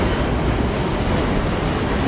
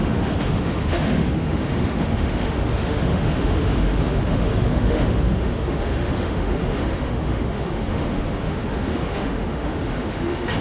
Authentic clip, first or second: first